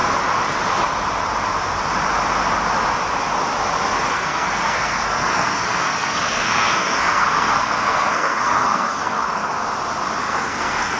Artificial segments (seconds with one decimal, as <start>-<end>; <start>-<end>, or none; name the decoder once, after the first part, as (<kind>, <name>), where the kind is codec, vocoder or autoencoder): 4.1-9.4 (codec, SNAC); 10.2-11.0